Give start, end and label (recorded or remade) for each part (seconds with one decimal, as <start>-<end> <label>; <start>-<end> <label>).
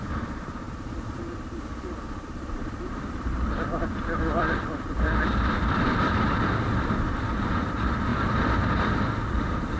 0.0-9.8 remade